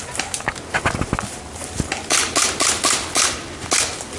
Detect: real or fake real